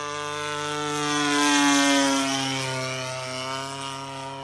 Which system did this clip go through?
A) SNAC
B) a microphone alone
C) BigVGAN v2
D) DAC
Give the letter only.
B